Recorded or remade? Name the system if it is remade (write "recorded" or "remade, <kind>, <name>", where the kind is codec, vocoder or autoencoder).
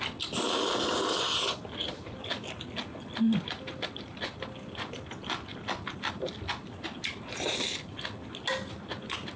recorded